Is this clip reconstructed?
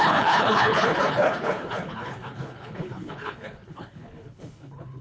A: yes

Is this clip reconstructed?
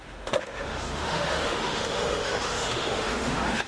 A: yes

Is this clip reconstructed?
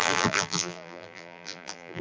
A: yes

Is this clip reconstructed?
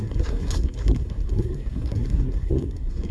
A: yes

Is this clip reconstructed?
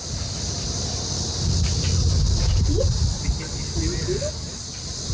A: no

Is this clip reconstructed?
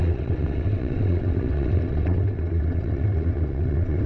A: yes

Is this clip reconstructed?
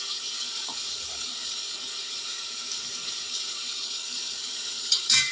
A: yes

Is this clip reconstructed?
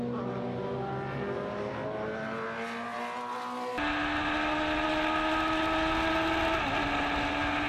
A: no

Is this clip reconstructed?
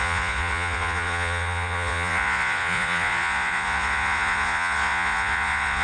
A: yes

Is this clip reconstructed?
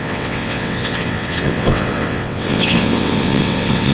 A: yes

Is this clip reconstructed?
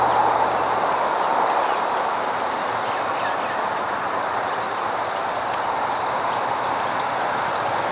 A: no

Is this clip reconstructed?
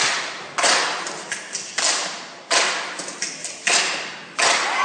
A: no